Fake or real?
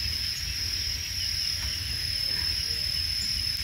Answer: real